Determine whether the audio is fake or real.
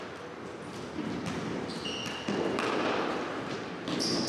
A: real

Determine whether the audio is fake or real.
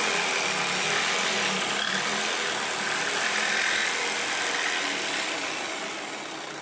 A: real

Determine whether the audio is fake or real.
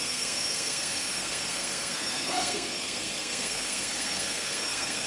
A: fake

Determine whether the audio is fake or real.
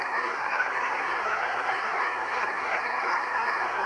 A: fake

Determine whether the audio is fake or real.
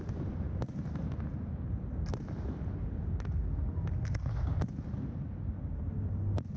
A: real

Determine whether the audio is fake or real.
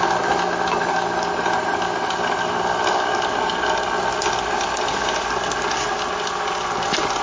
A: real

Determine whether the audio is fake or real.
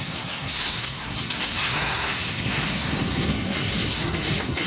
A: fake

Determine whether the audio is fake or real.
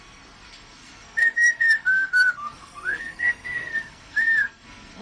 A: fake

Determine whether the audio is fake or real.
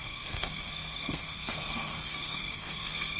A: fake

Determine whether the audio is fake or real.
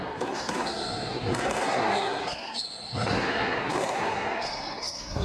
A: fake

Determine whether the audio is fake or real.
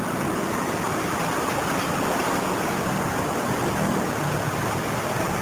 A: real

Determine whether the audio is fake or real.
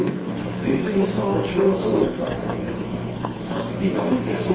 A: fake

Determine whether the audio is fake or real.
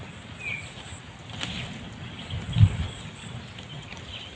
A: real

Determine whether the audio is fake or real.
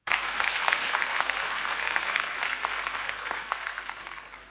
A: fake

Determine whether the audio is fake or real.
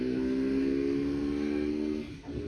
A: fake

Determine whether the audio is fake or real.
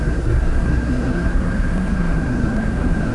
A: fake